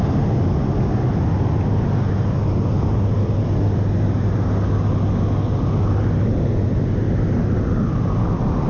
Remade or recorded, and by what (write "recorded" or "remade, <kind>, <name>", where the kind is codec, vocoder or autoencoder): recorded